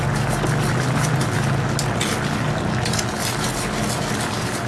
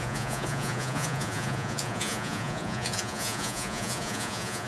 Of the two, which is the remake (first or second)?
second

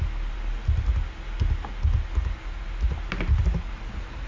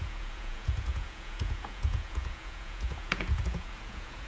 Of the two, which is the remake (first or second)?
second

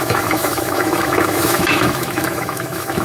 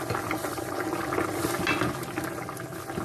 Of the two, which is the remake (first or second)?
first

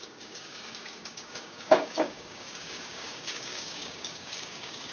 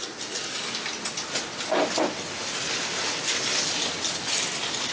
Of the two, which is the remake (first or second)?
first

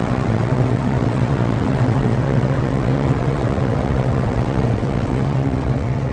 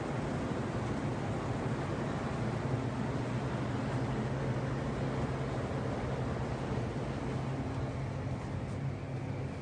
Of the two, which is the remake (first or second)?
first